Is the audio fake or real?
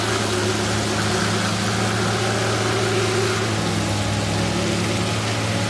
real